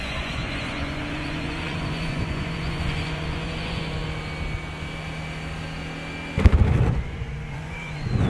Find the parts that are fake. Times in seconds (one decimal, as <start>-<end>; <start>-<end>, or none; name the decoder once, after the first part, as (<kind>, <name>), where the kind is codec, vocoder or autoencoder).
0.0-4.0 (vocoder, Vocos); 6.9-8.3